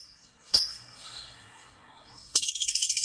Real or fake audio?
fake